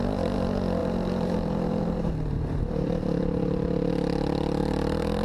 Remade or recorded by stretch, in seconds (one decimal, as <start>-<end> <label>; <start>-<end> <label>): 0.0-0.8 recorded; 0.8-3.9 remade; 3.9-4.6 recorded; 4.6-5.2 remade